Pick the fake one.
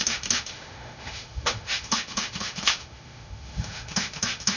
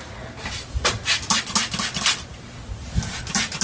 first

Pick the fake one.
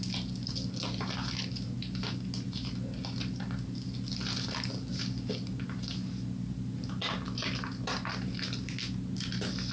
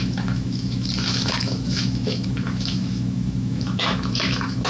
second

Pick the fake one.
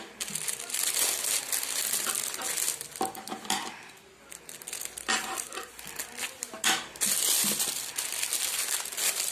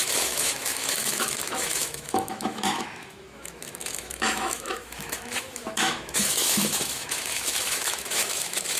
second